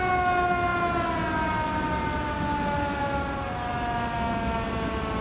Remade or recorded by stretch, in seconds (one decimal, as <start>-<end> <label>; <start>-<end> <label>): 0.0-5.2 recorded